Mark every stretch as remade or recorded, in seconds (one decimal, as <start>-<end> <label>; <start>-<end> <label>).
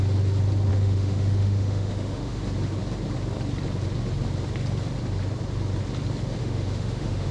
0.0-0.7 recorded; 0.7-2.4 remade; 2.4-6.4 recorded; 6.4-7.3 remade